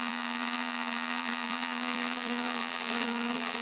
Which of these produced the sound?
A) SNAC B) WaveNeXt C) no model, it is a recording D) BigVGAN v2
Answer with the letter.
D